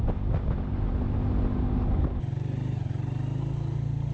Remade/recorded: recorded